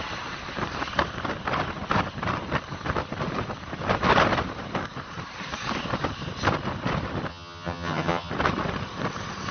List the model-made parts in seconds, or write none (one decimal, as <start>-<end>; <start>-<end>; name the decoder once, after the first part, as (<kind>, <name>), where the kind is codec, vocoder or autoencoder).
7.3-8.3 (vocoder, HiFi-GAN)